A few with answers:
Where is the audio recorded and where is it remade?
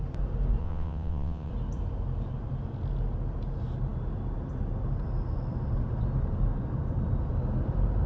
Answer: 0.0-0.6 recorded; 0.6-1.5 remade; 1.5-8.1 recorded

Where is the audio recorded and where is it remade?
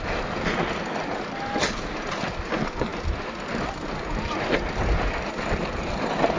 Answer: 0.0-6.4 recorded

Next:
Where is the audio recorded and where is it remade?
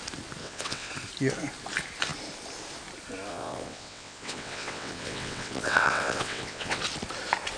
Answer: 0.0-0.4 recorded; 0.4-0.9 remade; 0.9-3.3 recorded; 3.3-6.8 remade; 6.8-7.6 recorded